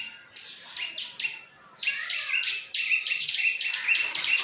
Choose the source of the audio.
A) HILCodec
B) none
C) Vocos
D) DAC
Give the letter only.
B